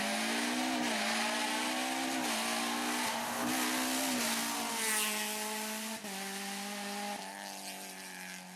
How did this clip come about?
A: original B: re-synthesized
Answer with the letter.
A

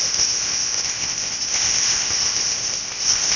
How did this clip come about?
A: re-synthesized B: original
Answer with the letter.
A